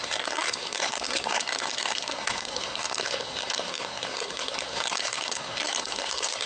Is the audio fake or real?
fake